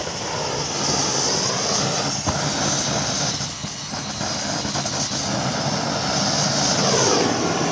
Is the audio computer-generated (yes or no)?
no